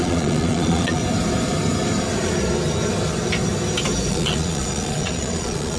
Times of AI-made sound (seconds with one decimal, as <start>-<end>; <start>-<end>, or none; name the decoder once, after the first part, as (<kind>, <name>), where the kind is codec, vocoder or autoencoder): 0.0-1.0 (vocoder, Vocos); 4.1-5.8